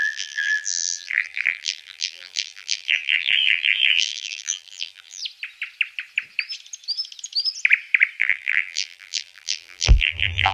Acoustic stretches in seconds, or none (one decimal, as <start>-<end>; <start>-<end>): 5.2-8.2